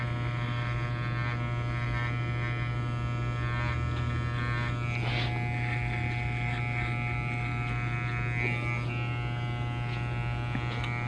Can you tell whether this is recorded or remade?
recorded